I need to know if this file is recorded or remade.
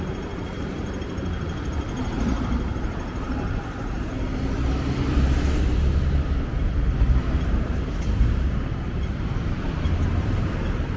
remade